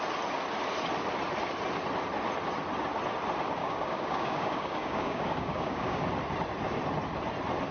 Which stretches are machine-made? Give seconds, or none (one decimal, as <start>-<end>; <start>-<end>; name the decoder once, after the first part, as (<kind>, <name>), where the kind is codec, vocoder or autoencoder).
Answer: 3.6-6.0 (codec, DAC)